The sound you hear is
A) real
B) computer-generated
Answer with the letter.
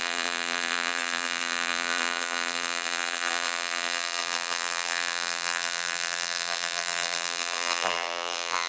B